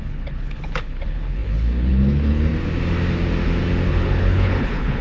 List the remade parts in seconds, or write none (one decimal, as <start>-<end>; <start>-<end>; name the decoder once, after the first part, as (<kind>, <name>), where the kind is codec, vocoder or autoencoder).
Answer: 0.0-2.5 (codec, HILCodec); 3.9-5.0